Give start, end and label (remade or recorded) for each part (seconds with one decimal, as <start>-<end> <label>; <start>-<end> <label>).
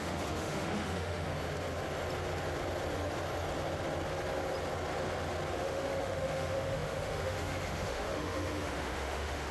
0.0-1.3 remade; 1.3-5.5 recorded; 5.5-9.5 remade